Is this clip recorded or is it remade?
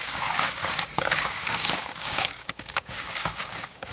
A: remade